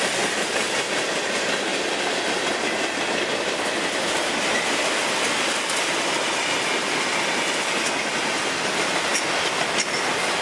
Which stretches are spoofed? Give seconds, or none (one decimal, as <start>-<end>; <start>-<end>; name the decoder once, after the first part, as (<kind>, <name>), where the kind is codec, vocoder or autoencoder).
none